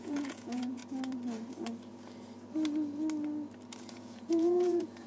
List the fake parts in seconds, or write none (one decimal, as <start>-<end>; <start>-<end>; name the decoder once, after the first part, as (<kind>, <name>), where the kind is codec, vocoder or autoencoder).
0.0-0.8 (vocoder, Vocos); 3.9-5.1